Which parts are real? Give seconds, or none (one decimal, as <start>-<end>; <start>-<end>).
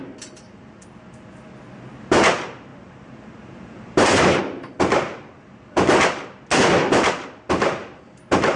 0.0-2.7; 4.4-8.6